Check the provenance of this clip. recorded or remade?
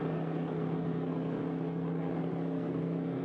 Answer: remade